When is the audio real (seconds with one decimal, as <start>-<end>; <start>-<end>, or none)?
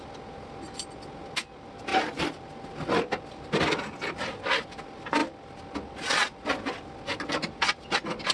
0.0-8.3